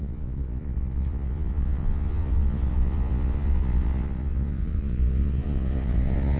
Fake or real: fake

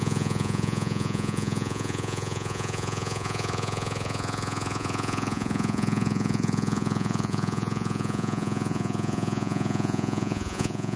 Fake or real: fake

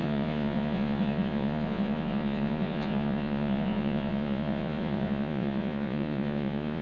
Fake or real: fake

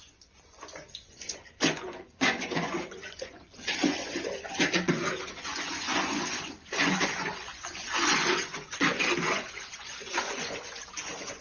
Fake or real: fake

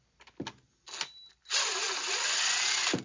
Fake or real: real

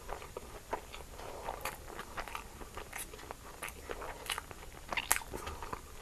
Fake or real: real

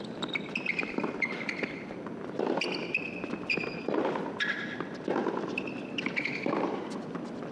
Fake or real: real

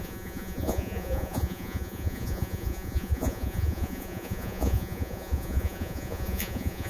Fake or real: fake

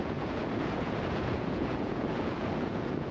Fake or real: fake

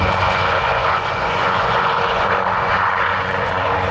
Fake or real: fake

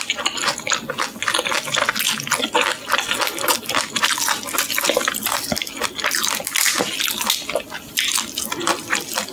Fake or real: real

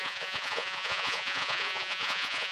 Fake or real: fake